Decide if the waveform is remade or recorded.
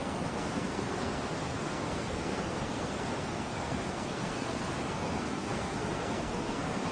remade